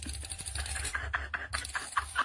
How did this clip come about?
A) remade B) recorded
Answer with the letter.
B